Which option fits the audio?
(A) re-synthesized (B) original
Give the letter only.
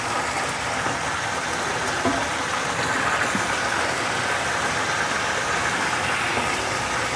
B